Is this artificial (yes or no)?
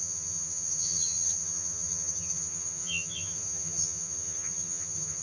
yes